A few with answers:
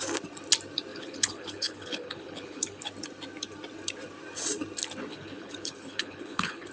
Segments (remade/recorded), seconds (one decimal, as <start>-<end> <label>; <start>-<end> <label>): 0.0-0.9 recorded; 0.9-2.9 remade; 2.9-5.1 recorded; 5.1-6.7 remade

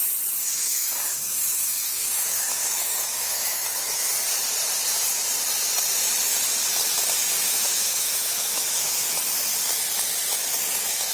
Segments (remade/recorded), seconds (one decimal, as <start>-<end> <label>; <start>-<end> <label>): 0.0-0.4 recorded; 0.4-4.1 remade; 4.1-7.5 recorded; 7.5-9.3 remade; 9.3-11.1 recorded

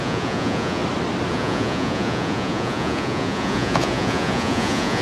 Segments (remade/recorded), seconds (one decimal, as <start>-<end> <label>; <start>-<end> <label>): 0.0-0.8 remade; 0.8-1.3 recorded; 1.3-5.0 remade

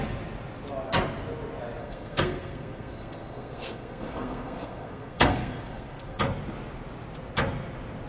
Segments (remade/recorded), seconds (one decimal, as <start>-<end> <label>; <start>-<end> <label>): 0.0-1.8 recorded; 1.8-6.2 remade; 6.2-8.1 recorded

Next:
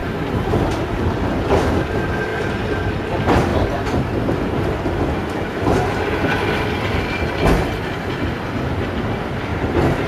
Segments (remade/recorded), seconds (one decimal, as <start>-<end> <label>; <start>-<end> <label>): 0.0-1.0 remade; 1.0-2.3 recorded; 2.3-2.9 remade; 2.9-9.5 recorded; 9.5-10.1 remade

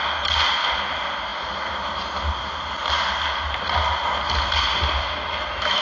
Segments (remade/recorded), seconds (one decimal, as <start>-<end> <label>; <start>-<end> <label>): 0.0-5.0 recorded; 5.0-5.8 remade

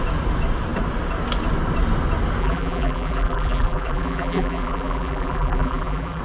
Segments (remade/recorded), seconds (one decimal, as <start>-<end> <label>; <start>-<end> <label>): 0.0-2.4 recorded; 2.4-6.2 remade

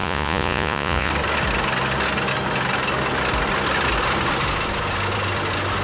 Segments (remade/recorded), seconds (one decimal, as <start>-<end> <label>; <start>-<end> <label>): 0.0-1.1 remade; 1.1-5.8 recorded